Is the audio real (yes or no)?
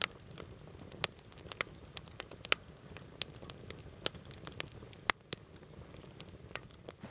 yes